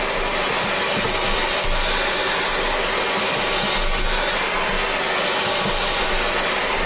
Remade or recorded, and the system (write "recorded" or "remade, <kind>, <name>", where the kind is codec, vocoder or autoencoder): recorded